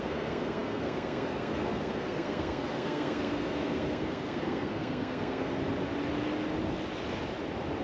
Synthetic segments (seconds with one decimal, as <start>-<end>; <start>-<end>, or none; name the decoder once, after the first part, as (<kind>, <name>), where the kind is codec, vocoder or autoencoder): 0.0-5.6 (codec, SNAC)